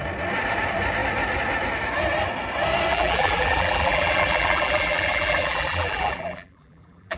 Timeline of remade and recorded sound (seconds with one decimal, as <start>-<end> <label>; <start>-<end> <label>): 0.0-2.9 recorded; 2.9-7.2 remade